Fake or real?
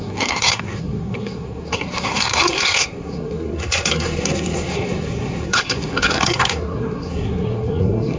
fake